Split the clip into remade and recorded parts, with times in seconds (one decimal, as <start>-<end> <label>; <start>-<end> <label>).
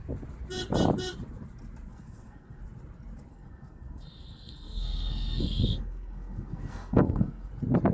0.0-1.9 recorded; 1.9-2.6 remade; 2.6-3.3 recorded; 3.3-7.5 remade; 7.5-7.9 recorded